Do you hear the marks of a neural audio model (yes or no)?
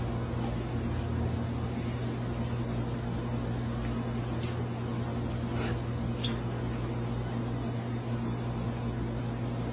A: no